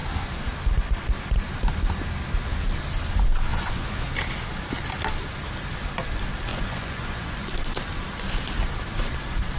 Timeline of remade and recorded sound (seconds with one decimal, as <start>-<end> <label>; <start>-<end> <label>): 0.0-3.5 recorded; 3.5-4.1 remade; 4.1-6.5 recorded; 6.5-7.5 remade; 7.5-9.6 recorded